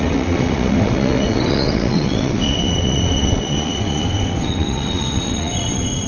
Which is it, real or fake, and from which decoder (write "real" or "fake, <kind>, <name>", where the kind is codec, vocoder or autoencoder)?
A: fake, vocoder, WaveNeXt